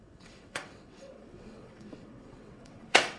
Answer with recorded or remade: remade